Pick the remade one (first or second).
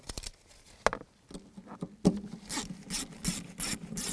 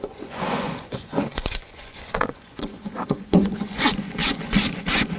second